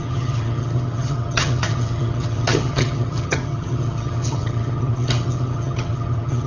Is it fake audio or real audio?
fake